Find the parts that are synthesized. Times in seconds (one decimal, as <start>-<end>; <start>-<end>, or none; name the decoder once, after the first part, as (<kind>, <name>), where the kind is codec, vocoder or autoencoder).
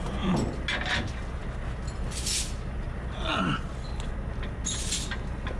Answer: none